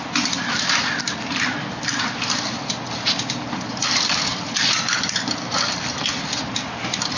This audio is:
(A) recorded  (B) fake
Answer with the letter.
A